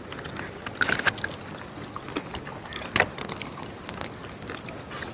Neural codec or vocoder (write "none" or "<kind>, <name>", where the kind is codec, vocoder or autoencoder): none